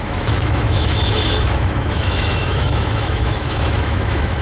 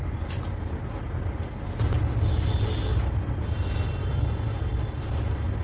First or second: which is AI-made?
first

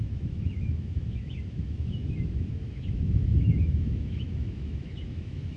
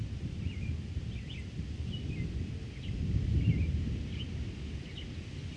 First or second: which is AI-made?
first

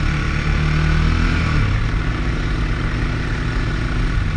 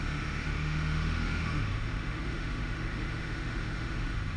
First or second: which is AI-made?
second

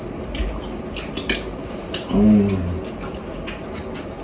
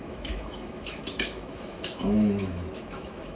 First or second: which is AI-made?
second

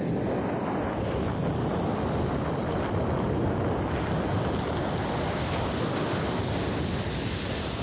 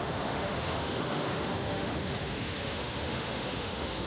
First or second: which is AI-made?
second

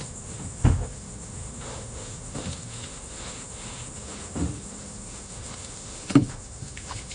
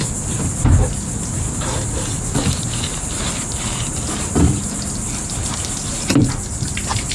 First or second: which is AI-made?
first